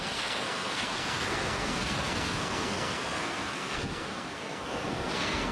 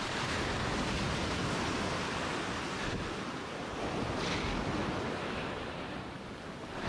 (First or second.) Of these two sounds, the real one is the second